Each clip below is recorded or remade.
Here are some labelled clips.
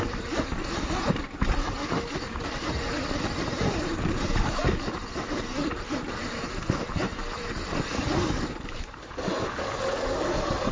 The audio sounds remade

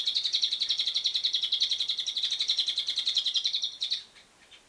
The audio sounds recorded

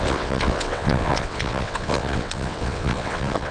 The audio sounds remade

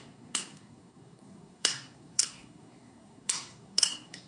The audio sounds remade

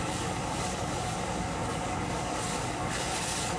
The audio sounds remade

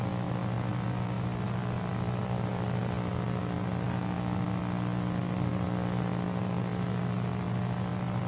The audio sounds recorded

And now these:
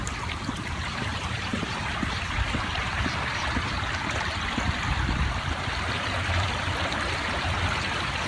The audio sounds remade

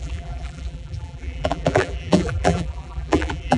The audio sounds remade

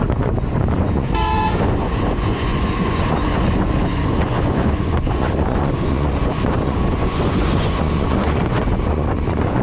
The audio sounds remade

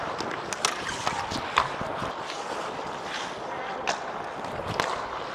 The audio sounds recorded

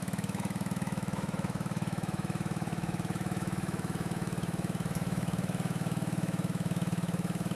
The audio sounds remade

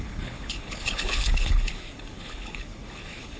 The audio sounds remade